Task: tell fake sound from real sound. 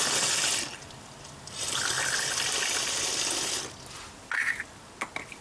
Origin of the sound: real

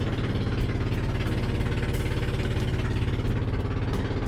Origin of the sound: real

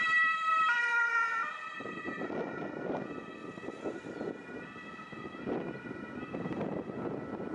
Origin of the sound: real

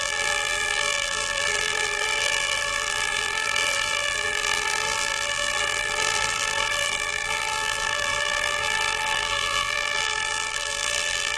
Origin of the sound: fake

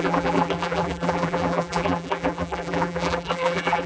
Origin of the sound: fake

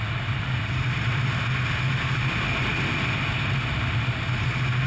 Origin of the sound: real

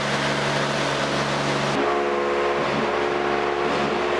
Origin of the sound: real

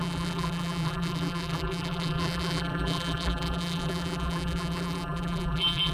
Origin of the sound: fake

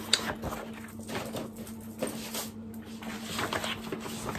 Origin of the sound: real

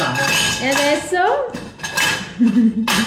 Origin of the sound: real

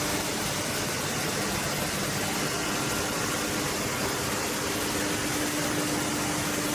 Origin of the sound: real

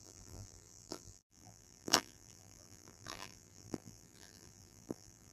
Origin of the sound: fake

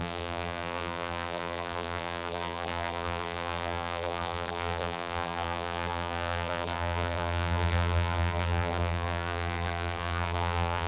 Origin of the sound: fake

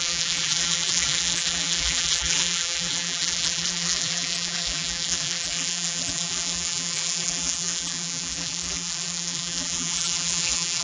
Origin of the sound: fake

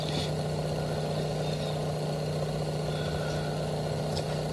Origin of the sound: real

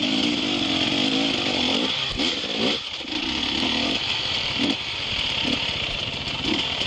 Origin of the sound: fake